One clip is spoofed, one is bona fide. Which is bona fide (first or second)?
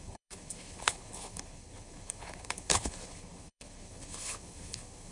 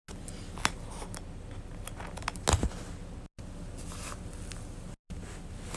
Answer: second